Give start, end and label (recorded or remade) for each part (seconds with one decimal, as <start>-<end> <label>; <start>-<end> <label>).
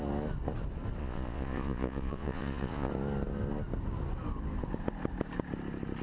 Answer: 0.0-1.0 recorded; 1.0-2.9 remade; 2.9-6.0 recorded